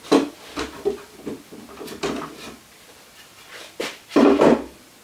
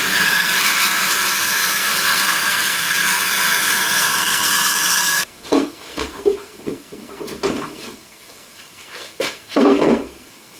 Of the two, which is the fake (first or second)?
second